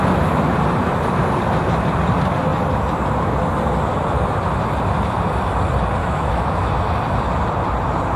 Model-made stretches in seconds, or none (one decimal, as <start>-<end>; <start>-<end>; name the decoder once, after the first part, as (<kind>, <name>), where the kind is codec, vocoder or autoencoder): 6.0-6.7 (autoencoder, DAC-VAE)